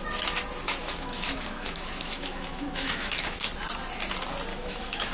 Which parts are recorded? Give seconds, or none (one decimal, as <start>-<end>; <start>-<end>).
0.0-0.8; 3.5-4.5

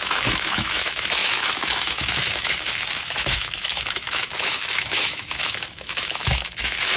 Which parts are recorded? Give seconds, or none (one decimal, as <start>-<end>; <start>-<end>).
none

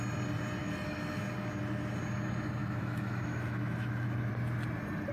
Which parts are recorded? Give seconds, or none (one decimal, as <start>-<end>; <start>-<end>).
0.0-0.6; 1.2-2.6; 4.3-5.1

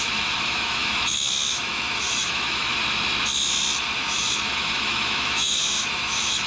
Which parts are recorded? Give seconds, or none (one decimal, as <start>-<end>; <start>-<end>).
2.7-4.0

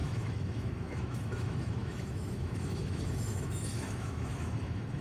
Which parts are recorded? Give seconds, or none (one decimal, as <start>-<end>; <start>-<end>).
none

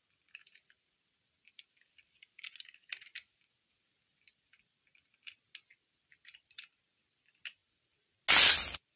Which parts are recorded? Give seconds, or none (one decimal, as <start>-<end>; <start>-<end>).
0.0-9.0